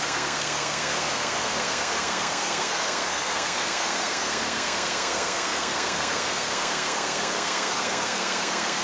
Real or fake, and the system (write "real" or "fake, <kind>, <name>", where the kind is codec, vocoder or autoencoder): fake, codec, SNAC